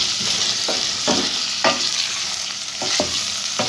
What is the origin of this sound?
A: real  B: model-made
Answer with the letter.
A